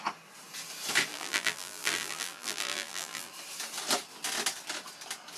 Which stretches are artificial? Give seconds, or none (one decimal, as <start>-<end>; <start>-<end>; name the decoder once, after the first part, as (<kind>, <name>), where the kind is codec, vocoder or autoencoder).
1.1-3.3 (vocoder, BigVGAN v2)